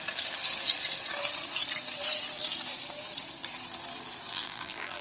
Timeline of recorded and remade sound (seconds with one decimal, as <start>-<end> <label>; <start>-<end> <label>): 0.0-4.3 recorded; 4.3-5.0 remade